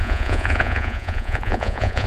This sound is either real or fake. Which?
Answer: fake